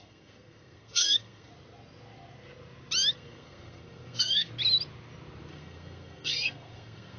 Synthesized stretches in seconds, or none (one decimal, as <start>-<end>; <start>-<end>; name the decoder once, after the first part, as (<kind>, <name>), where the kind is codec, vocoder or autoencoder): 0.0-1.5 (codec, SNAC); 3.1-4.5; 5.5-7.2